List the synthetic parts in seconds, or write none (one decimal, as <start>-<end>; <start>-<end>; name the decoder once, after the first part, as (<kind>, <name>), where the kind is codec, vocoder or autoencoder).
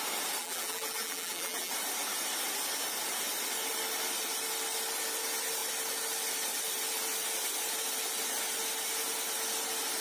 0.4-1.7 (vocoder, BigVGAN v2)